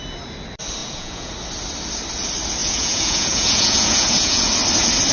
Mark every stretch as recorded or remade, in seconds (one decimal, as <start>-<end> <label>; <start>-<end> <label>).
0.0-0.8 recorded; 0.8-1.3 remade; 1.3-2.6 recorded; 2.6-4.5 remade; 4.5-5.1 recorded